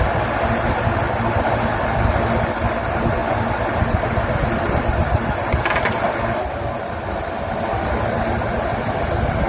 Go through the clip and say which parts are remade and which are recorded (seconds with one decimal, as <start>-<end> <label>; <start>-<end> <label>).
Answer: 0.0-9.5 recorded